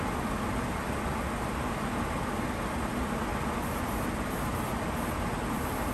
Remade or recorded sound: recorded